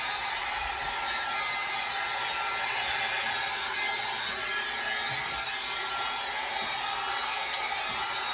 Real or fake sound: real